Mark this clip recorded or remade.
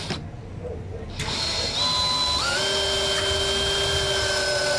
recorded